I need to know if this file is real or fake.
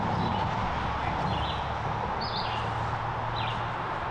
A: real